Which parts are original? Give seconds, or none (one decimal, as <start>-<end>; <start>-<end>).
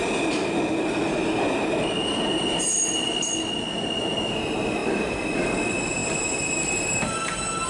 0.0-4.8; 5.6-6.0; 7.0-7.7